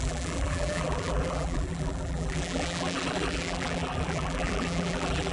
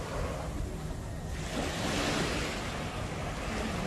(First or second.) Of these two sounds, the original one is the second